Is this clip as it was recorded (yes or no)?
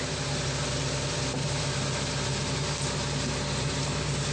yes